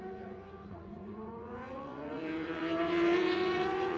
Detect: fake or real fake